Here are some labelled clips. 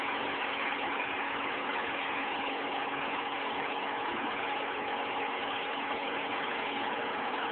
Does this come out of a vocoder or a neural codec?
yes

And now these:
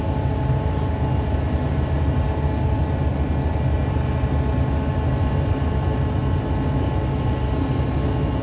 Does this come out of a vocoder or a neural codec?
no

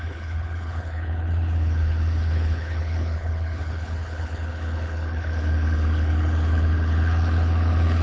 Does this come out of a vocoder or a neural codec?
yes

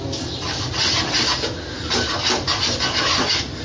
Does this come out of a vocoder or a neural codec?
no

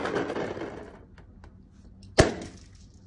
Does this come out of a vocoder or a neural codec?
no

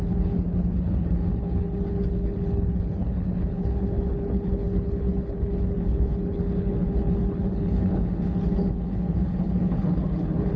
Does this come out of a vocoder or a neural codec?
yes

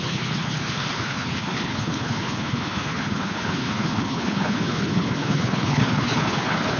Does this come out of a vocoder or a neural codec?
yes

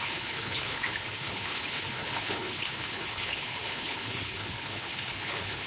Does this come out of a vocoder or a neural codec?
yes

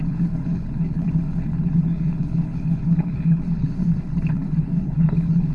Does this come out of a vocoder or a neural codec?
yes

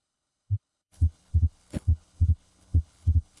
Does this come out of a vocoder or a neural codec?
yes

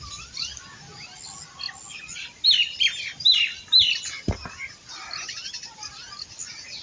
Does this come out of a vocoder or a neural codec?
no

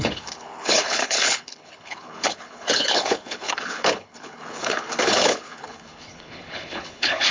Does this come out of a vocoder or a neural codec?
yes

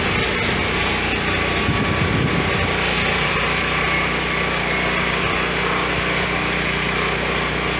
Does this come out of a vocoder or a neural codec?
no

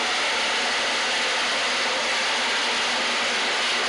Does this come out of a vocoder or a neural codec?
no